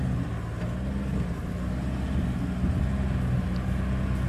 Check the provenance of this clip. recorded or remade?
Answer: recorded